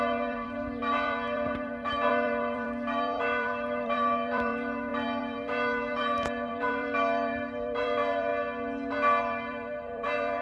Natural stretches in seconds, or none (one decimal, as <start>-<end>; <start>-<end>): 8.3-9.2